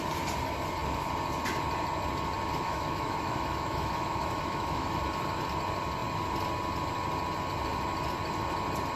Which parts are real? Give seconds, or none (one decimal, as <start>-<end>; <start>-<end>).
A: 0.0-2.5; 5.0-9.0